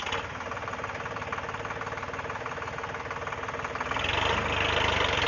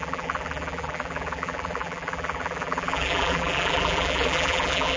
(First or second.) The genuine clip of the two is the first